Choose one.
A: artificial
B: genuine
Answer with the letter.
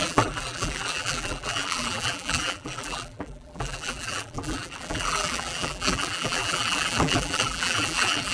A